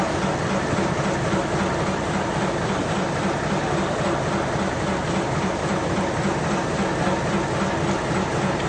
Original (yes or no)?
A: yes